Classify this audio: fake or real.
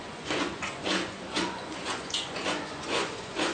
fake